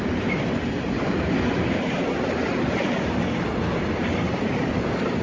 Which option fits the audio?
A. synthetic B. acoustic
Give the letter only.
B